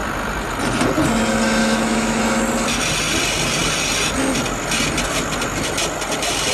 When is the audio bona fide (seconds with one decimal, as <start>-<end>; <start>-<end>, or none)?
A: 0.0-1.6; 2.2-6.5